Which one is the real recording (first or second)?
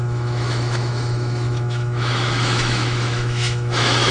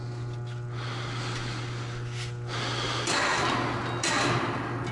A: second